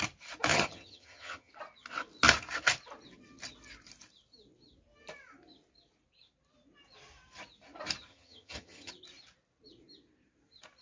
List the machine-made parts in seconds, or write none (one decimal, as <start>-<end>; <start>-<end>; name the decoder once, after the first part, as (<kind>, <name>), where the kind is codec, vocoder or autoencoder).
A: 0.5-1.5 (vocoder, HiFi-GAN); 8.1-8.9